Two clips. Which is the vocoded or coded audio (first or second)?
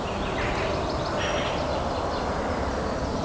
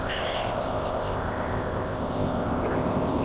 second